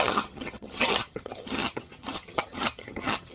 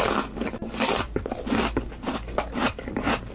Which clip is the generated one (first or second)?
first